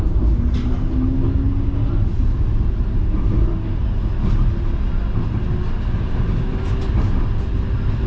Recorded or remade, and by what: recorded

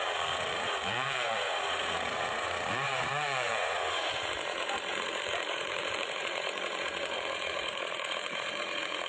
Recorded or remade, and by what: remade, vocoder, Vocos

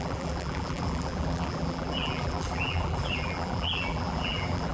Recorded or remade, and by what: remade, vocoder, BigVGAN v2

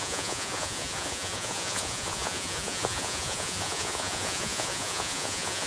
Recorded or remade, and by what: remade, vocoder, Vocos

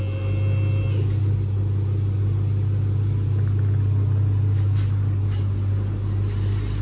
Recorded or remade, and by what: recorded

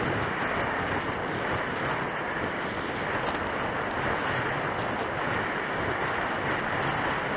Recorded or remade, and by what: recorded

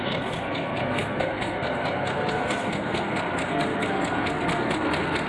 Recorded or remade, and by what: remade, codec, SNAC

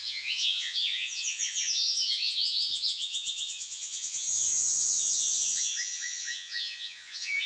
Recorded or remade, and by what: remade, vocoder, Vocos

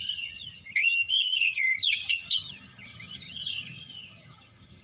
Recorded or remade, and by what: remade, vocoder, HiFi-GAN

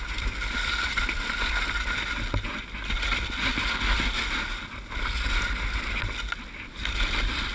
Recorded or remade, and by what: recorded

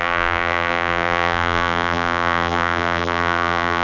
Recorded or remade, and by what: remade, vocoder, BigVGAN v2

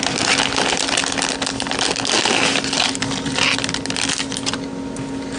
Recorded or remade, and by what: recorded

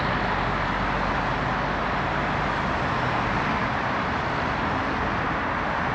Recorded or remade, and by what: recorded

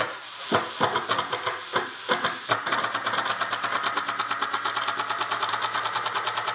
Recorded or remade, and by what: recorded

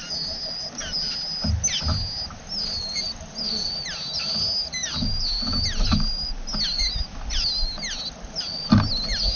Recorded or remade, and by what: recorded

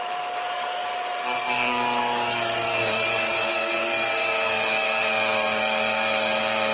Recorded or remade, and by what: remade, codec, DAC